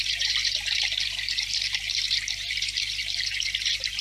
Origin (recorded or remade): remade